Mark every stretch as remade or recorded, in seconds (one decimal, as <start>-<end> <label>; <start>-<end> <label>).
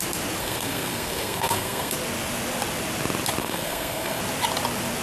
0.0-0.4 recorded; 0.4-1.9 remade; 1.9-3.4 recorded; 3.4-4.2 remade; 4.2-5.0 recorded